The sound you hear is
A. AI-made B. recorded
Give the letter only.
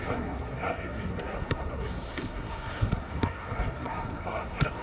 A